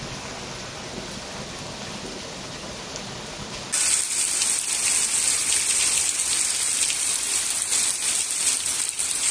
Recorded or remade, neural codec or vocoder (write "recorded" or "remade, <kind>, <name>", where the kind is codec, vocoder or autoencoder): recorded